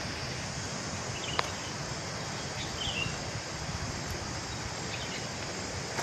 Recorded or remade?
recorded